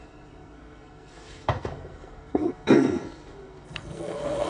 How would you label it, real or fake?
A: fake